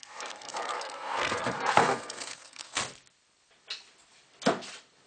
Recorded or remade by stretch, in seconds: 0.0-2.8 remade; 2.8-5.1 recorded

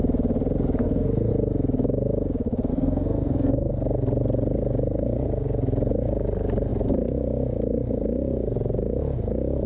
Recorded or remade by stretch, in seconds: 0.0-0.8 recorded; 0.8-1.3 remade; 1.3-2.7 recorded; 2.7-3.7 remade; 3.7-9.7 recorded

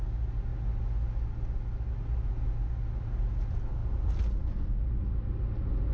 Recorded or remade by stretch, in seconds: 0.0-5.9 recorded

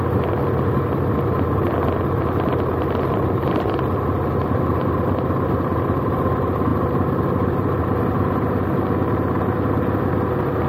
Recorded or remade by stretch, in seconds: 0.0-10.7 recorded

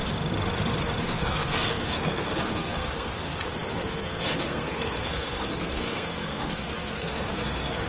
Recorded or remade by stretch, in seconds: 0.0-1.0 recorded; 1.0-7.9 remade

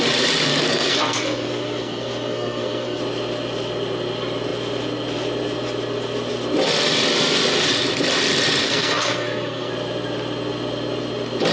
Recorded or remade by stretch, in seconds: 0.0-0.5 recorded; 0.5-3.0 remade; 3.0-8.6 recorded; 8.6-9.7 remade; 9.7-11.5 recorded

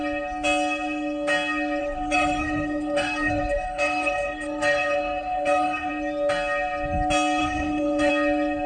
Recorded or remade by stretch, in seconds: 0.0-1.8 recorded; 1.8-5.9 remade; 5.9-7.4 recorded; 7.4-8.1 remade; 8.1-8.7 recorded

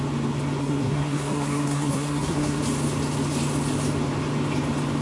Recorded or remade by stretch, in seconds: 0.0-0.6 recorded; 0.6-2.6 remade; 2.6-5.0 recorded